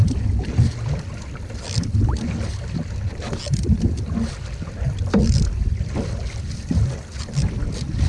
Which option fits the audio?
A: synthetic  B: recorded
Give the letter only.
B